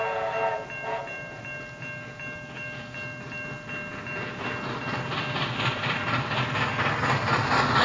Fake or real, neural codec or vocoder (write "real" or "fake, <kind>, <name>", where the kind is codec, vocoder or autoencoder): real